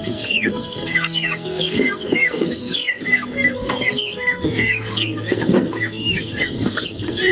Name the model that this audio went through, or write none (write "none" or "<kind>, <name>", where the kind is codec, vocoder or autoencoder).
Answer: codec, SNAC